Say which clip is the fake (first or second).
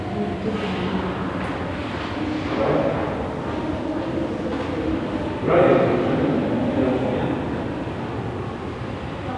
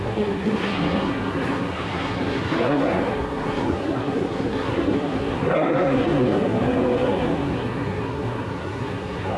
second